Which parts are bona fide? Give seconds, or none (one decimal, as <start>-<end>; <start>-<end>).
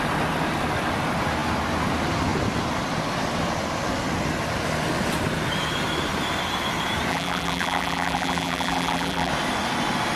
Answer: 0.0-7.1; 9.3-10.2